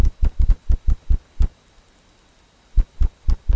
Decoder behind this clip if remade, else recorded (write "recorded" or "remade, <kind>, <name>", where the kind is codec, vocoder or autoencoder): recorded